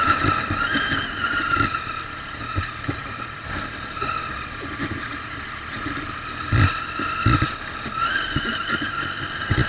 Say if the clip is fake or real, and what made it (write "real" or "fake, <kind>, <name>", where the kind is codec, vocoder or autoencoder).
real